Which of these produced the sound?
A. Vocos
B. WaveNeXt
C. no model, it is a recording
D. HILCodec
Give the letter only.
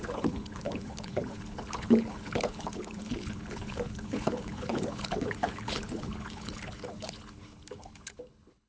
D